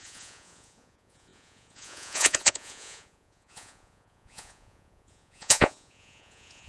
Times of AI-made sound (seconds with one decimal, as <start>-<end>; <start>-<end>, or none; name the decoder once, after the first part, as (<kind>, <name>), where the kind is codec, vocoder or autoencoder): 0.0-6.7 (vocoder, Vocos)